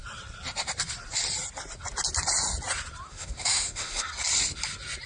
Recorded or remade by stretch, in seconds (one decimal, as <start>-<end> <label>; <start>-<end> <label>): 0.0-3.1 recorded; 3.1-4.1 remade; 4.1-5.1 recorded